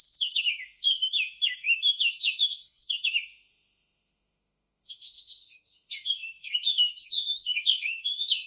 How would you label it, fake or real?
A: fake